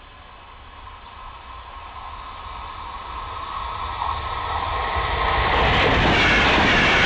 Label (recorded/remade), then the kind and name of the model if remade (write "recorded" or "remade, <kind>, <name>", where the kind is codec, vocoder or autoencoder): recorded